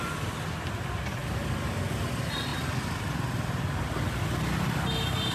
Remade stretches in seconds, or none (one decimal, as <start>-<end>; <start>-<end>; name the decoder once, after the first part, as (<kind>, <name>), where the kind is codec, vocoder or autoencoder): 1.2-1.8 (vocoder, BigVGAN v2)